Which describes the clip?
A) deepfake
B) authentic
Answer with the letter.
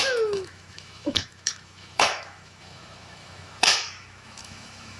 A